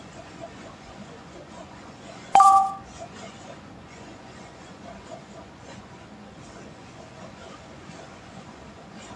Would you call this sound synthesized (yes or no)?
yes